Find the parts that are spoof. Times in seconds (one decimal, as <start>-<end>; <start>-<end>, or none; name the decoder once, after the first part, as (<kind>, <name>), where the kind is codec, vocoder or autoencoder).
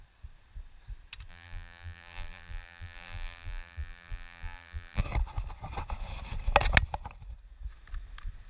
1.3-5.0 (vocoder, BigVGAN v2)